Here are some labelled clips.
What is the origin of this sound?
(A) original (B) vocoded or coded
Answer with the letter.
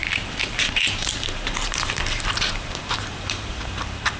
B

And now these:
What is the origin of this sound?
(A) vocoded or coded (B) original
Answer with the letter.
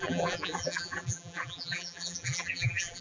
A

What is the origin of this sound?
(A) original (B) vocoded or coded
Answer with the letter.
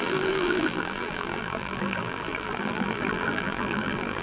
B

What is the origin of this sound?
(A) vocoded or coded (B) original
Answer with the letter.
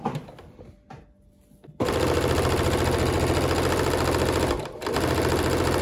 B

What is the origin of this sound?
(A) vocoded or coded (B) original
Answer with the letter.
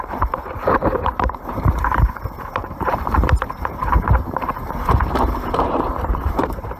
A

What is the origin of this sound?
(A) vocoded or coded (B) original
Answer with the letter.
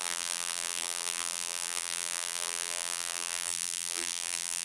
A